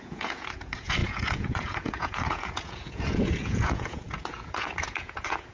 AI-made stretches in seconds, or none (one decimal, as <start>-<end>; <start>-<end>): 0.0-5.5